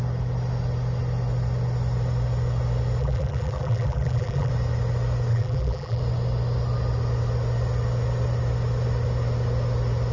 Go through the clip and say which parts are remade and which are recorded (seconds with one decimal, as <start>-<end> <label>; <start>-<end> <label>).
0.0-3.0 recorded; 3.0-4.5 remade; 4.5-5.3 recorded; 5.3-6.0 remade; 6.0-10.1 recorded